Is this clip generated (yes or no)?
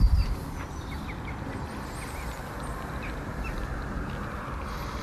no